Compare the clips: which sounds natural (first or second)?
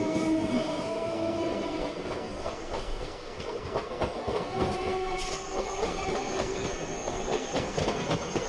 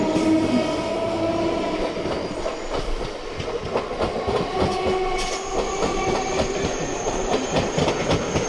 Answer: second